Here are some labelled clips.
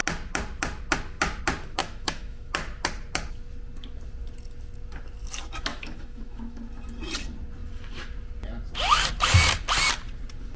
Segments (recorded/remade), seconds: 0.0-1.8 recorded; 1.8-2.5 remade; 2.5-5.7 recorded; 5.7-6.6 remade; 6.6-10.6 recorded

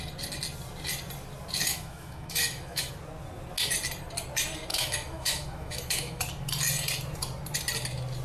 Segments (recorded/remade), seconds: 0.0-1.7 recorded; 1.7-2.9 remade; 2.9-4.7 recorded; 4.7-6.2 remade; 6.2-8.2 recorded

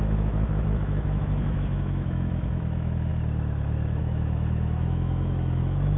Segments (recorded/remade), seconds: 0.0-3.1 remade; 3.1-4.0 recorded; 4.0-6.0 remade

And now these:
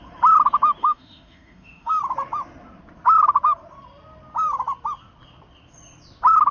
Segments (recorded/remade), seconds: 0.0-0.8 recorded; 0.8-2.0 remade; 2.0-6.5 recorded